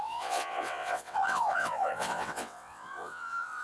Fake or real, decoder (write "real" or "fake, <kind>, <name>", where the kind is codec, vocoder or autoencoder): fake, vocoder, WaveNeXt